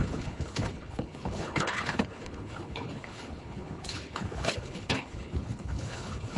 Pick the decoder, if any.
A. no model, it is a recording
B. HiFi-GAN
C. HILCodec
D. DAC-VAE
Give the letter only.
C